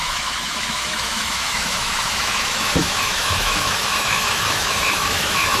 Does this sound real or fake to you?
fake